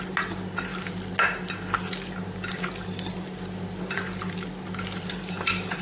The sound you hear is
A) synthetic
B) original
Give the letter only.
B